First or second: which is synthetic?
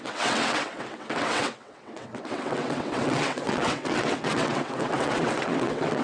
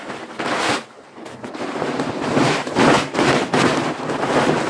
first